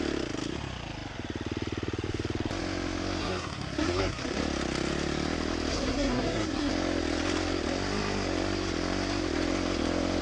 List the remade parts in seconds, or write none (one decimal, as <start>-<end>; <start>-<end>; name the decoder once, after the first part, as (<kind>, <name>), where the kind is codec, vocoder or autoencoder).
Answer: 3.2-4.4 (codec, SNAC); 5.7-6.7